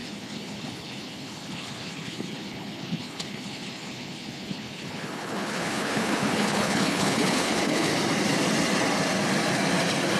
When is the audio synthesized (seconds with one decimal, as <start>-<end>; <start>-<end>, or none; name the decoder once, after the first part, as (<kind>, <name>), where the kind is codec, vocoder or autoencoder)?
0.0-7.9 (codec, HILCodec)